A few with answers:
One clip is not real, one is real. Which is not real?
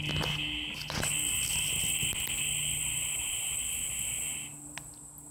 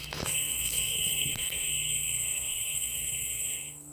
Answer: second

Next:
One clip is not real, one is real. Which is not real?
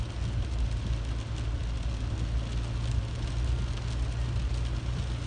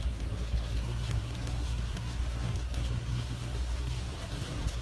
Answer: second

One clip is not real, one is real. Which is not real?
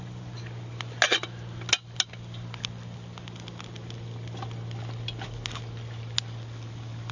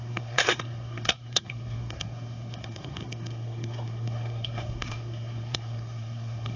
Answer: second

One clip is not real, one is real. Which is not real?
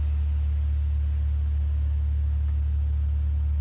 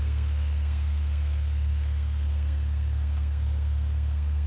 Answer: second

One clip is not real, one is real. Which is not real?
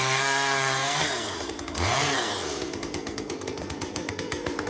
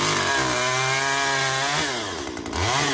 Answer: first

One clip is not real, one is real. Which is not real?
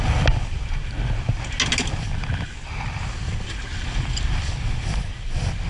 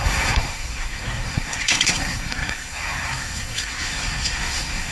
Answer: second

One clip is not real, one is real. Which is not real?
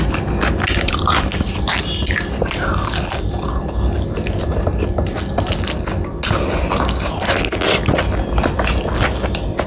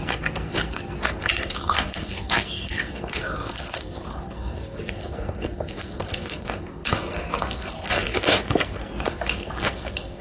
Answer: second